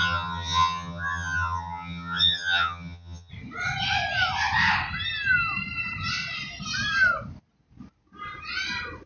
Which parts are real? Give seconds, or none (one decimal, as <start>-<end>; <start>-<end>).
3.3-9.1